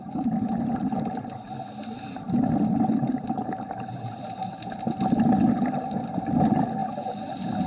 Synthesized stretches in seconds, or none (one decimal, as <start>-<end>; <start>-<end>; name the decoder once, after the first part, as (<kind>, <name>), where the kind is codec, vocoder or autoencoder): none